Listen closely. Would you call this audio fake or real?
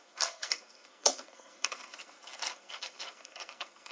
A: fake